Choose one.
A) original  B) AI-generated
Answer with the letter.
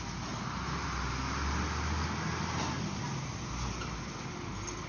A